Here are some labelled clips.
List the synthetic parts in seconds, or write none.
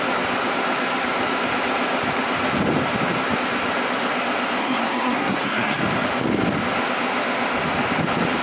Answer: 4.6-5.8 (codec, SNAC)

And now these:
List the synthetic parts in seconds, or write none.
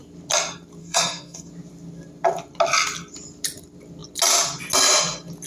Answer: 0.8-1.5 (codec, SNAC)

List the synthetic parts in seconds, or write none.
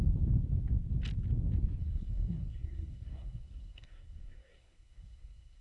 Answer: 1.8-5.6 (codec, SNAC)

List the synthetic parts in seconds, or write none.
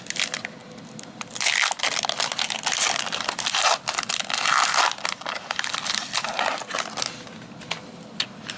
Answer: none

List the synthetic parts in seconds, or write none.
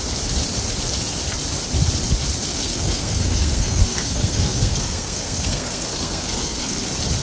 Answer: 2.5-6.8 (codec, SNAC)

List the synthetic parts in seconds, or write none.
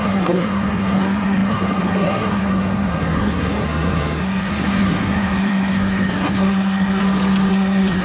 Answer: 0.0-7.0 (codec, SNAC); 7.5-8.0